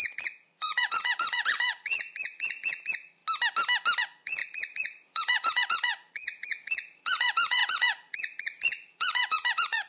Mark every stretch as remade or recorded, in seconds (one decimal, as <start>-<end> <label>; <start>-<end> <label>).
0.0-3.2 remade; 3.2-4.0 recorded; 4.0-9.9 remade